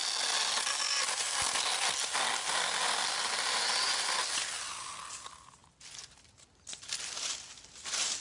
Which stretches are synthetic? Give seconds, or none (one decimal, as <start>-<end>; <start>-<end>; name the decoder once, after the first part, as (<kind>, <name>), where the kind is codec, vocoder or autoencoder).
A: none